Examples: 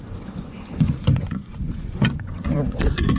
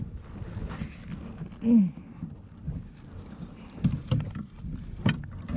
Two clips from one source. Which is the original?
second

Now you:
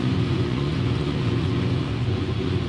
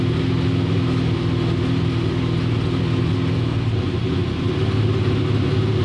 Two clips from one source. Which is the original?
second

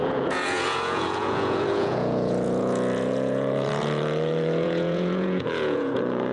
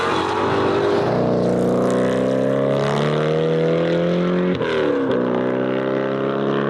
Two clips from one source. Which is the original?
second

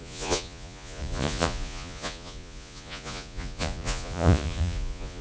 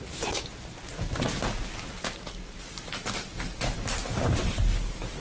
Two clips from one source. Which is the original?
second